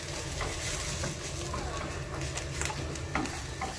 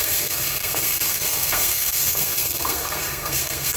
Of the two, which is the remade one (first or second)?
second